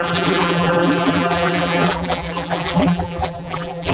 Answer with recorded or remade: remade